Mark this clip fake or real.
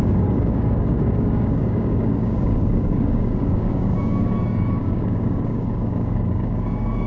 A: fake